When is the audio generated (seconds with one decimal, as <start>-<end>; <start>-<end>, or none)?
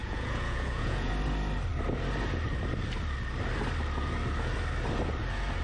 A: 0.0-1.1